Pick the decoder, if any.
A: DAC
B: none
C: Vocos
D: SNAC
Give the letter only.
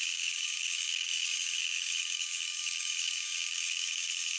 A